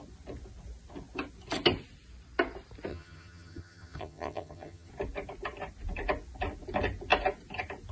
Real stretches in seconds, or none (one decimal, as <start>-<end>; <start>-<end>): 0.0-2.9; 4.9-7.9